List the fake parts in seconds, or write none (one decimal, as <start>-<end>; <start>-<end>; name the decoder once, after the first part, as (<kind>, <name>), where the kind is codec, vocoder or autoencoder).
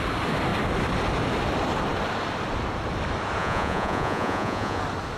3.4-4.8 (vocoder, Vocos)